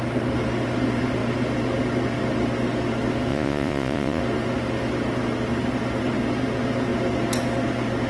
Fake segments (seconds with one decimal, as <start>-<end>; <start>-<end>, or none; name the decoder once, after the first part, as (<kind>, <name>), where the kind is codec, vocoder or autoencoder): 3.3-4.2 (vocoder, Vocos)